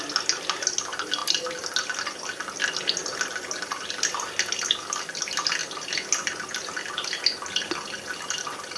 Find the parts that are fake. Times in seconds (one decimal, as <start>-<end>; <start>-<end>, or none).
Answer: none